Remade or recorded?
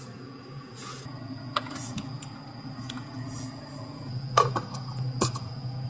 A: remade